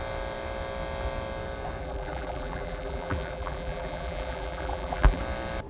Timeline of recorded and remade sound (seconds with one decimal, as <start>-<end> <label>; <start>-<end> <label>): 0.0-1.8 recorded; 1.8-5.2 remade; 5.2-5.7 recorded